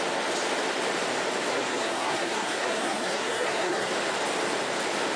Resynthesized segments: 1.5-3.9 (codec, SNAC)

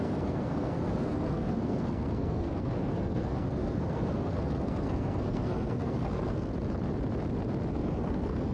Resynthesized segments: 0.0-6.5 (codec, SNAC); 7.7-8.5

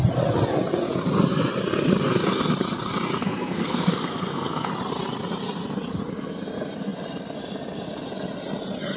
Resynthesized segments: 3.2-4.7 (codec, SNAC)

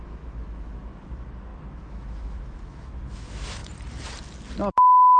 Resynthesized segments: 0.0-3.6 (autoencoder, DAC-VAE); 4.7-5.2

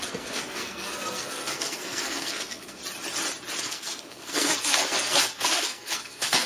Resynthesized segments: 0.0-2.8 (codec, SNAC); 3.6-6.5